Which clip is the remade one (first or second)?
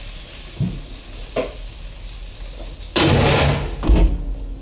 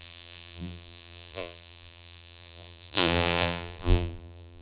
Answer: second